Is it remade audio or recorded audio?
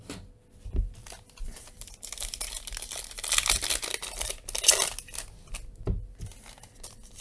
recorded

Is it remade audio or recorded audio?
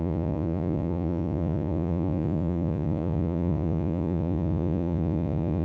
remade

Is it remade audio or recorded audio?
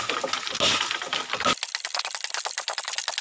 recorded